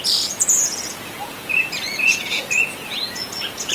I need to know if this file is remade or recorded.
remade